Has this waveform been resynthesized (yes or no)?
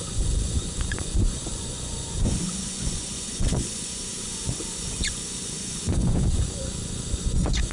yes